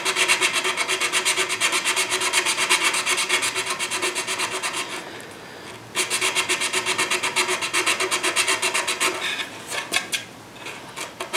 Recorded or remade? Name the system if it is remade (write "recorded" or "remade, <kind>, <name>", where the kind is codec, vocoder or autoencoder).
recorded